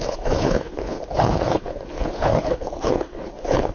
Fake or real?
fake